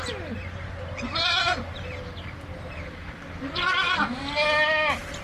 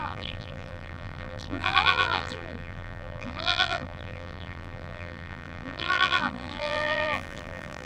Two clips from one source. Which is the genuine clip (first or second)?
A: first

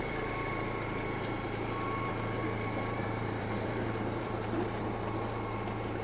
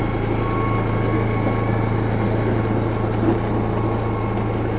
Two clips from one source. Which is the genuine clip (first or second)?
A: second